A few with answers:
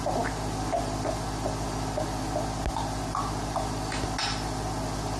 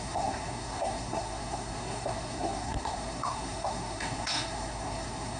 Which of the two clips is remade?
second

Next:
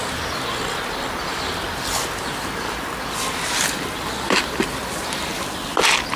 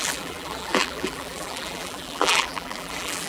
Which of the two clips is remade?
second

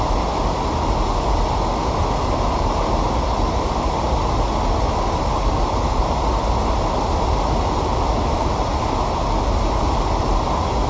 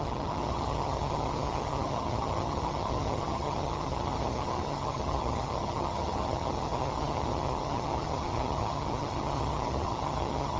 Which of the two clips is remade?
second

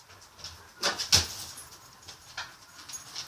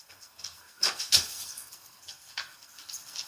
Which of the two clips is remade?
second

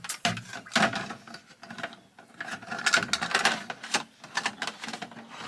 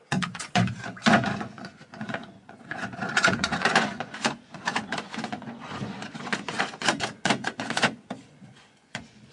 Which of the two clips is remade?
second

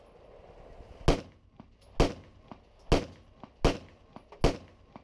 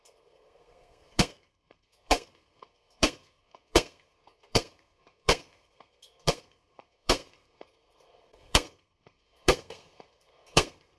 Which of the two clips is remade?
second